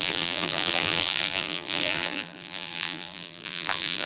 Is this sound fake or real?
fake